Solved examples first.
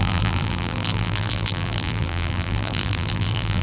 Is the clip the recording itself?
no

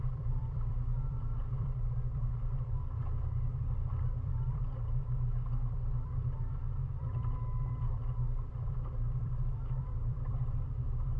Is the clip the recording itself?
no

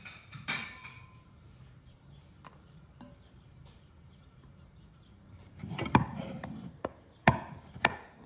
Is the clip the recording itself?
no